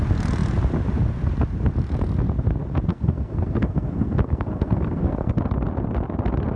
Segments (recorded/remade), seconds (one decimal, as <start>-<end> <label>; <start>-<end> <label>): 0.0-2.9 recorded; 2.9-5.3 remade; 5.3-6.6 recorded